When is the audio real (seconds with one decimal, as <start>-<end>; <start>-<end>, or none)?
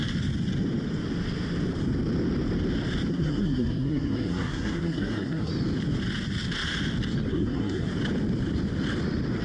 0.0-3.1; 5.5-7.3; 7.9-9.4